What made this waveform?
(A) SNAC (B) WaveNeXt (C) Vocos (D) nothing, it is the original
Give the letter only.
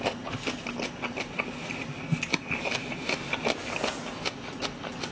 D